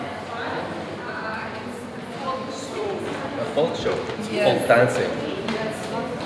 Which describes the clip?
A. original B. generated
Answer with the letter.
A